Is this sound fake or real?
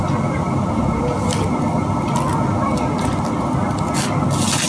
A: real